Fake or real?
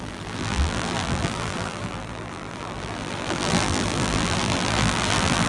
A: fake